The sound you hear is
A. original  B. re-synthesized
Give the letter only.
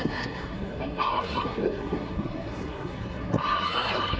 B